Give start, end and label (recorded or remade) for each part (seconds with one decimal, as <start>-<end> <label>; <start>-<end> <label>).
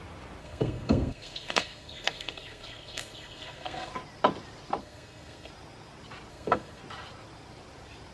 0.0-0.4 recorded; 0.4-3.9 remade; 3.9-4.8 recorded; 4.8-5.5 remade; 5.5-6.3 recorded; 6.3-6.8 remade; 6.8-8.1 recorded